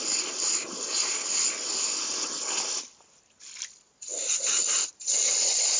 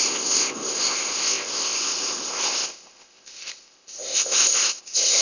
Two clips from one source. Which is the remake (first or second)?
second